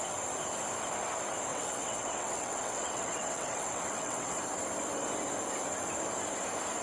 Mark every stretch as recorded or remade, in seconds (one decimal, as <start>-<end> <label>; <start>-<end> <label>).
0.0-1.5 recorded; 1.5-4.4 remade; 4.4-6.8 recorded